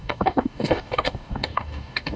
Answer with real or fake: fake